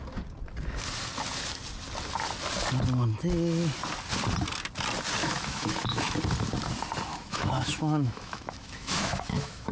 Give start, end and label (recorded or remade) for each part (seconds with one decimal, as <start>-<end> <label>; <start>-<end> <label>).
0.0-5.2 recorded; 5.2-6.2 remade; 6.2-7.1 recorded; 7.1-9.7 remade